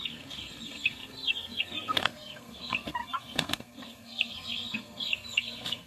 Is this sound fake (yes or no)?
yes